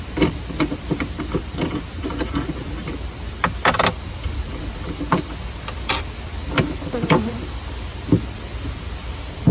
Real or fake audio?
real